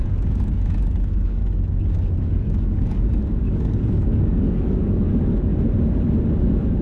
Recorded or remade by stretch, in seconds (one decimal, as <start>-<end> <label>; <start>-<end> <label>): 0.0-1.4 remade; 1.4-2.2 recorded; 2.2-5.5 remade; 5.5-6.3 recorded; 6.3-6.8 remade